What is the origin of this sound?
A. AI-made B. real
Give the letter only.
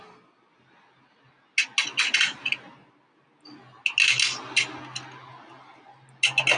B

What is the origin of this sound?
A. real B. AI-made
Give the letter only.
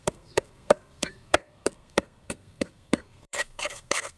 B